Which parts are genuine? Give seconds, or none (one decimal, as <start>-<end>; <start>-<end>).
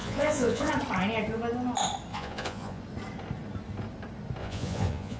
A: 0.7-2.1; 2.8-4.4